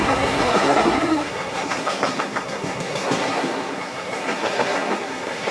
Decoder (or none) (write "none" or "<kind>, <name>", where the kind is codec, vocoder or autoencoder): codec, SNAC